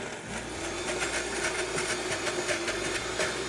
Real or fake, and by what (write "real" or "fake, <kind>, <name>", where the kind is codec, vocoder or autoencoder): real